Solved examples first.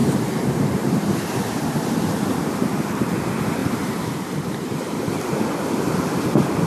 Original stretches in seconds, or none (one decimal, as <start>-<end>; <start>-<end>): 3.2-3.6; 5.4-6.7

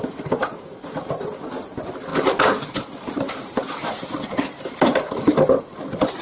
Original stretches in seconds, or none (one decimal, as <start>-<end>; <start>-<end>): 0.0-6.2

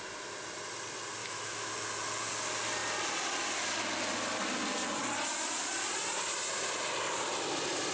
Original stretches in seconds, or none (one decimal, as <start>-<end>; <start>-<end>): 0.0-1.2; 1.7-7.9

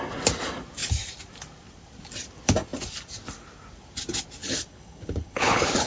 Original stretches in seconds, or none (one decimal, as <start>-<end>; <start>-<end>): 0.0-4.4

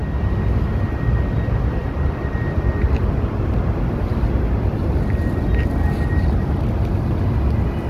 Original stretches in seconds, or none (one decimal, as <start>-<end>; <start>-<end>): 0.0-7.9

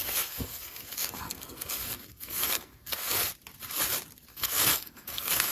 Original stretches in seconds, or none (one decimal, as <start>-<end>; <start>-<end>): 3.3-4.3

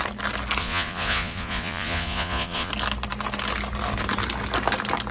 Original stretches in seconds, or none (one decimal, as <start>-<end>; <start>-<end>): 0.0-0.6; 2.7-5.1